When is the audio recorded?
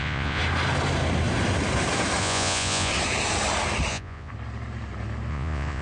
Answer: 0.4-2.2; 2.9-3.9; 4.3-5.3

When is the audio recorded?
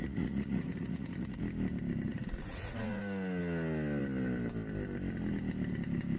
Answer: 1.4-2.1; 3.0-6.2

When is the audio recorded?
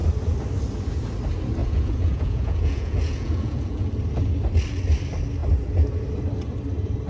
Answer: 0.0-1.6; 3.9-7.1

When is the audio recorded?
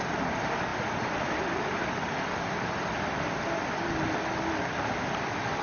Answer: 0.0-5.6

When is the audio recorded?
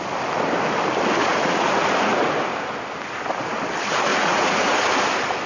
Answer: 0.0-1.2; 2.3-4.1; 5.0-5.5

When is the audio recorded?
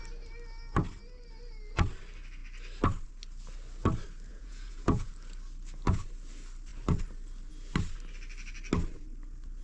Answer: 0.0-4.3; 5.1-9.6